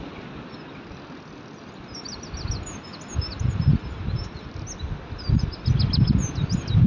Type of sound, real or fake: real